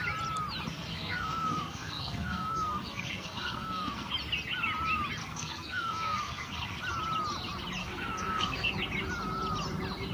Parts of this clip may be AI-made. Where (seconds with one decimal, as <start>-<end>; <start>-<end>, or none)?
0.7-4.1; 5.2-6.8; 7.8-8.7